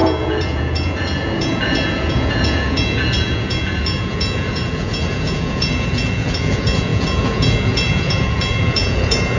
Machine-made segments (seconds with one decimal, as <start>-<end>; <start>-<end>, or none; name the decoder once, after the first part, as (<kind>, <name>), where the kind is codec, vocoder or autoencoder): 0.0-9.4 (vocoder, Vocos)